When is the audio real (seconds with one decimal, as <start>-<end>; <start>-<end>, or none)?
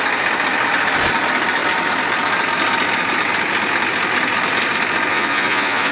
0.0-5.1